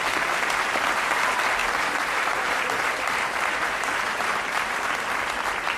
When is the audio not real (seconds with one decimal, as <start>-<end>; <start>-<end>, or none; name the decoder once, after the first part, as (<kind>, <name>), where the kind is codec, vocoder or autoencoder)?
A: 1.6-5.1 (vocoder, BigVGAN v2)

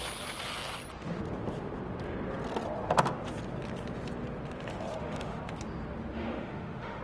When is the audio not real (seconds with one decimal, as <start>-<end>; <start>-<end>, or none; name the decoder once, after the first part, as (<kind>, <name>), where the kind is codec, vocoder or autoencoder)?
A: 4.9-5.4 (autoencoder, DAC-VAE); 6.1-7.0

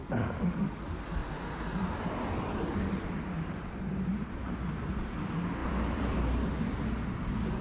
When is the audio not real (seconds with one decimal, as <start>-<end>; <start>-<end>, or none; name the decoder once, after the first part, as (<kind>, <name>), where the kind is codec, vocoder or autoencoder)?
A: 5.6-6.2 (vocoder, BigVGAN v2)

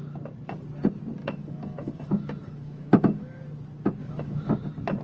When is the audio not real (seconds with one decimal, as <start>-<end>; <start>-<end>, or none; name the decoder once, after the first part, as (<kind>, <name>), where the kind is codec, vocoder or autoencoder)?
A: 1.2-3.4 (autoencoder, DAC-VAE); 4.0-4.5

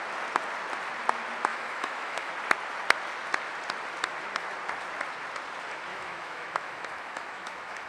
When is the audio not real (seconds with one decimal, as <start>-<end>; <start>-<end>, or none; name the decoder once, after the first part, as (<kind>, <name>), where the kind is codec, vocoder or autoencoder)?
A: 1.5-2.3 (autoencoder, DAC-VAE); 5.9-7.9

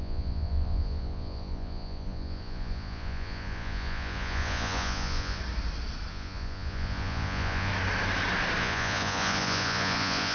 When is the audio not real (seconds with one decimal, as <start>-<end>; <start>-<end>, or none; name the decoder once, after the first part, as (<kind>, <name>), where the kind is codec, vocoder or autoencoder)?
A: 0.0-5.4 (vocoder, Vocos); 6.1-7.7; 8.6-10.3